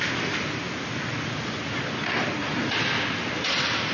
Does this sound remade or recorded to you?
recorded